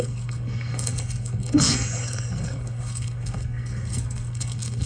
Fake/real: fake